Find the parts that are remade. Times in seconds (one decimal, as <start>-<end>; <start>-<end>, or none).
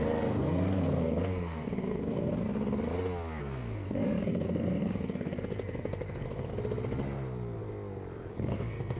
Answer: 0.0-2.4; 3.4-6.5; 8.3-9.0